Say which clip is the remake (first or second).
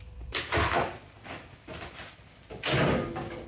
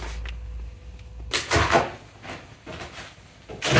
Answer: first